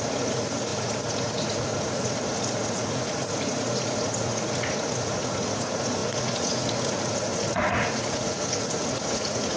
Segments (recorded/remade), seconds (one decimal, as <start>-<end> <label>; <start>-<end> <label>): 0.0-9.6 remade